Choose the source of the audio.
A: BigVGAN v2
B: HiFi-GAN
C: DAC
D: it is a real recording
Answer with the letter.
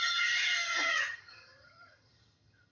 B